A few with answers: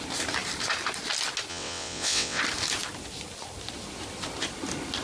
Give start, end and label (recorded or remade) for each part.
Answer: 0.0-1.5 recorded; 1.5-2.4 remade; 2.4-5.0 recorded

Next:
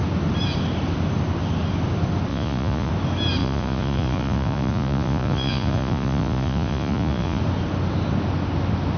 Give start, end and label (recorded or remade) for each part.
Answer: 0.0-2.3 recorded; 2.3-2.9 remade; 2.9-3.4 recorded; 3.4-7.4 remade; 7.4-9.0 recorded

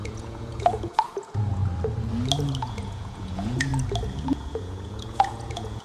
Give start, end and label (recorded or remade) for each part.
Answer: 0.0-1.6 remade; 1.6-2.6 recorded; 2.6-3.7 remade; 3.7-4.3 recorded; 4.3-5.8 remade